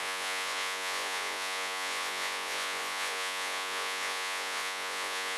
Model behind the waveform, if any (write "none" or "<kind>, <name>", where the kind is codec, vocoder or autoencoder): vocoder, Vocos